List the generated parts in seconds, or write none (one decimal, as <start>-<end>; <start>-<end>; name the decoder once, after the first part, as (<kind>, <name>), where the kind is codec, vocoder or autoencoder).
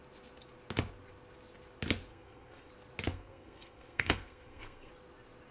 2.1-2.7 (codec, SNAC); 3.1-4.9